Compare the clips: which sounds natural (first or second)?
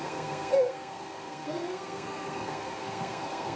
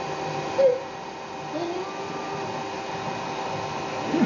second